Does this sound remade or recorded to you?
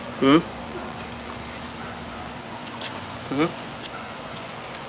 remade